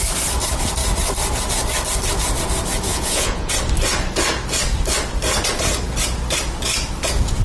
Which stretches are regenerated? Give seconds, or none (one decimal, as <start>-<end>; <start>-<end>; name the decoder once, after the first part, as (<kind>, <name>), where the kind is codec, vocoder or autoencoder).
2.9-3.5 (vocoder, Vocos)